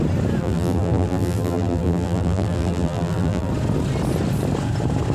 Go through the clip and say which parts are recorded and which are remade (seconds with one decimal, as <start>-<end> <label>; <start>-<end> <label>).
0.0-0.4 recorded; 0.4-3.5 remade; 3.5-5.1 recorded

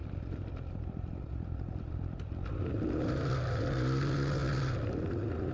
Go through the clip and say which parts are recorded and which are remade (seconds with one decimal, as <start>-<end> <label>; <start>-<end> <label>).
0.0-3.3 remade; 3.3-5.5 recorded